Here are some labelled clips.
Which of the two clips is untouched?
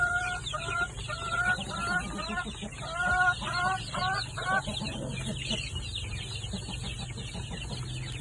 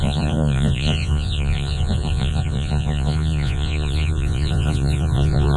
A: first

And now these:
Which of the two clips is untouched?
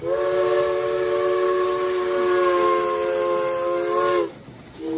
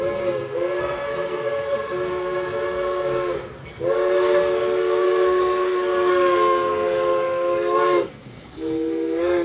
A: first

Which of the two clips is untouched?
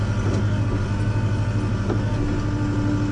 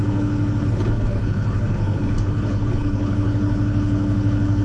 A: first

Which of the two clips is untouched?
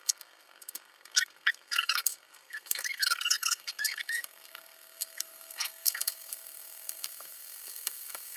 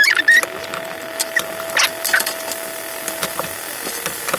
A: second